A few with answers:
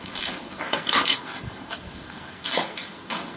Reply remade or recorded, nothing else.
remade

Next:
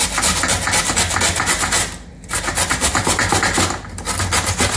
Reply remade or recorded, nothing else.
recorded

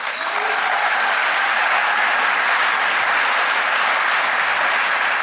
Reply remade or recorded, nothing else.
recorded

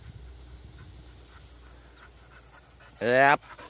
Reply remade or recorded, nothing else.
recorded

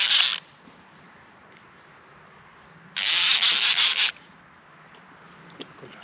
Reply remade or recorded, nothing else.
recorded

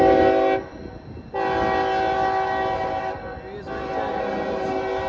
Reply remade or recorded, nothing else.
recorded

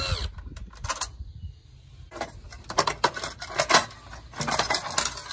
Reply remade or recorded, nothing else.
recorded